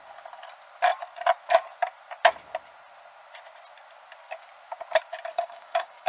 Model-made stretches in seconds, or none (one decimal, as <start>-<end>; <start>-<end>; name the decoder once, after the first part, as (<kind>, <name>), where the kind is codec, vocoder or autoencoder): 5.3-6.1 (codec, DAC)